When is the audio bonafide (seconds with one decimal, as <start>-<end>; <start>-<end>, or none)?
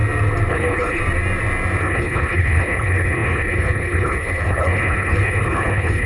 0.0-0.5; 1.0-1.8